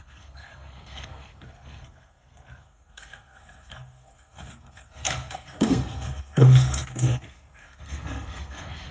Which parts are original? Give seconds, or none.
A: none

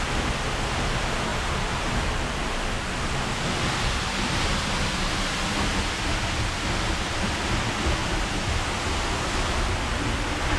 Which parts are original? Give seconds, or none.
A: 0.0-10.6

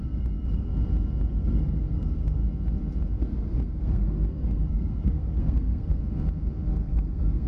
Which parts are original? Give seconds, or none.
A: 0.7-1.3; 2.4-3.2; 6.0-6.7

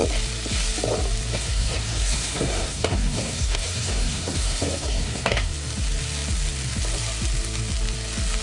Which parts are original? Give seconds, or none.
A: 0.0-1.3; 5.5-8.4

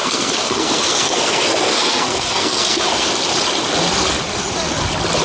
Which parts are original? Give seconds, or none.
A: 3.1-5.2

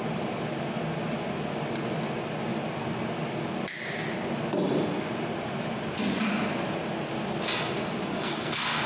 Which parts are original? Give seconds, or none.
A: 0.0-8.1

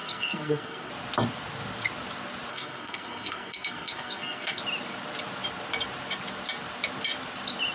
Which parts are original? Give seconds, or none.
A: 0.9-2.5; 4.6-7.7